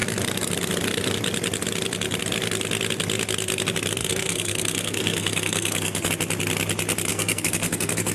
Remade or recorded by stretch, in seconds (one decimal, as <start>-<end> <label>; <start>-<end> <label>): 0.0-4.0 recorded; 4.0-6.1 remade; 6.1-7.1 recorded; 7.1-8.1 remade